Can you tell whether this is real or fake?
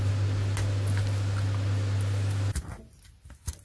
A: real